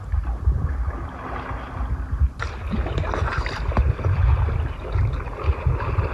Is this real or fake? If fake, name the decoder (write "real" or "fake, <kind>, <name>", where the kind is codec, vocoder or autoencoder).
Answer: real